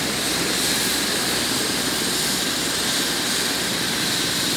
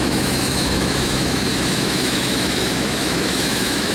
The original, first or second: first